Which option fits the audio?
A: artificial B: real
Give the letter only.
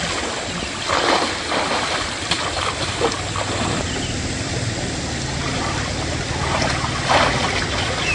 A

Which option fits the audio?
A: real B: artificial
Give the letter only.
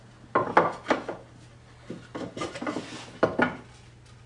A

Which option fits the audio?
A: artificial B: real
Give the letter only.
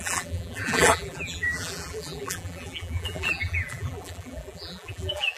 A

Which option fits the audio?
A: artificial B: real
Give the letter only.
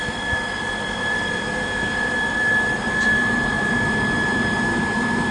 A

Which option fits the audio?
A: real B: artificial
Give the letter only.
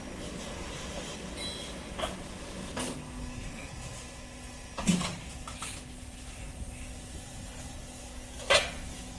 A